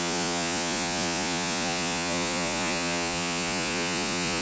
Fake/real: fake